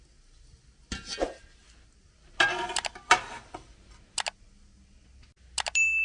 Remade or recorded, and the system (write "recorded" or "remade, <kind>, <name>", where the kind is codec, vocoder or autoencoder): recorded